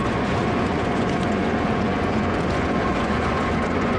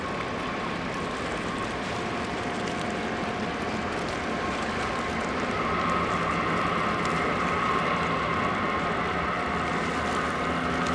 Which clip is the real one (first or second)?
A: second